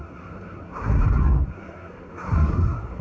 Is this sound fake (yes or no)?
yes